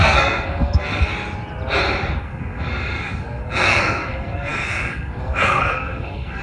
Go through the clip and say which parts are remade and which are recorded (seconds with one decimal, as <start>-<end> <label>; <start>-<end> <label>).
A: 0.0-1.1 remade; 1.1-2.2 recorded; 2.2-6.4 remade